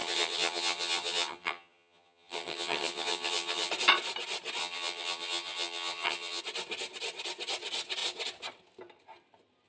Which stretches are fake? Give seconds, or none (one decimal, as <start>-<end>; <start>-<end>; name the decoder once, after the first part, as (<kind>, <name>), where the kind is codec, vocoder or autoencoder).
0.0-3.7 (vocoder, HiFi-GAN); 4.6-6.4